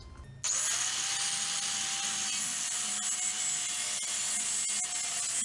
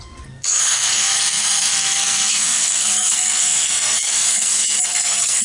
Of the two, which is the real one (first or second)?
first